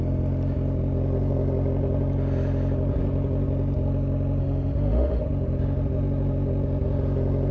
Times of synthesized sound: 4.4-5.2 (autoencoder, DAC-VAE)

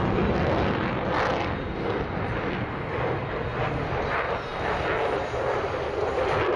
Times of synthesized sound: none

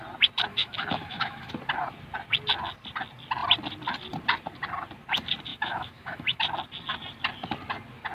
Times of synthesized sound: 0.5-1.5 (autoencoder, DAC-VAE); 5.5-6.4